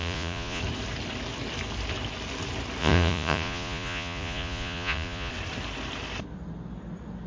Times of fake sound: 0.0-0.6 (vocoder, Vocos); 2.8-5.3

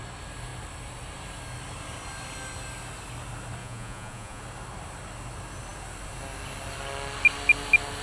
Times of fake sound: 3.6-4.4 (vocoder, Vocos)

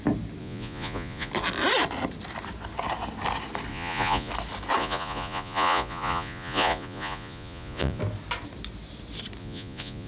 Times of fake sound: 0.4-1.3 (vocoder, Vocos); 3.7-4.3; 4.8-8.0; 9.4-10.1